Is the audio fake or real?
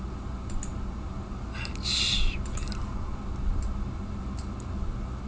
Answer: real